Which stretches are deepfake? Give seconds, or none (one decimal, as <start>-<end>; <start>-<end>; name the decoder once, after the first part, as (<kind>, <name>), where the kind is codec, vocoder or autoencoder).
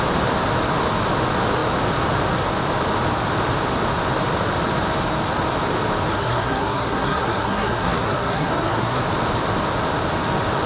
6.1-9.0 (codec, SNAC)